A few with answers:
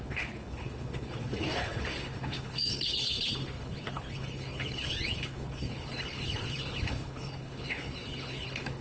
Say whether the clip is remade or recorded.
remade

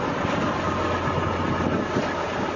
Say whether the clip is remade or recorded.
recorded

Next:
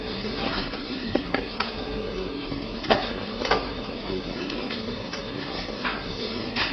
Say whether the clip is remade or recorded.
remade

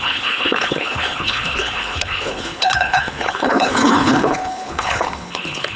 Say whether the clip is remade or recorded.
remade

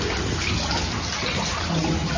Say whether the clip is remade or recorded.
recorded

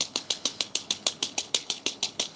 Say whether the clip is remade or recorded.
remade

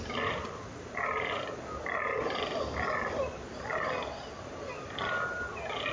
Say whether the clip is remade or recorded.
recorded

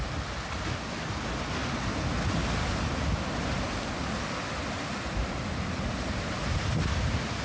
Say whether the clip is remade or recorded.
recorded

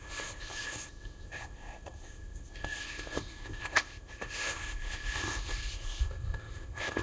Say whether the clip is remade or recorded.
remade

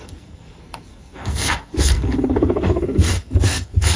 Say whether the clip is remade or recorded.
remade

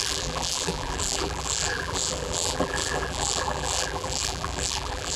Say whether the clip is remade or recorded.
remade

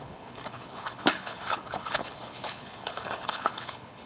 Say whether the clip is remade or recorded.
remade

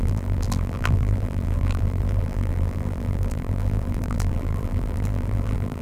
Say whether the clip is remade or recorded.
remade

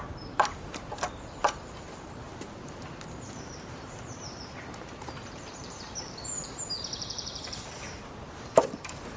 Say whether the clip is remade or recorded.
remade